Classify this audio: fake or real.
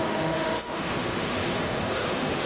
fake